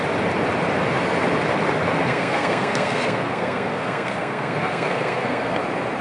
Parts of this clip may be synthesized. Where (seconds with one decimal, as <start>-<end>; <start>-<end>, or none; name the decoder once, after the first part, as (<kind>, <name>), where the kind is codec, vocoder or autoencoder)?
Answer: 2.0-5.6 (codec, SNAC)